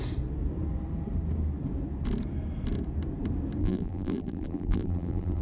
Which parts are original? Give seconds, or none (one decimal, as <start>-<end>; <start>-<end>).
0.0-3.6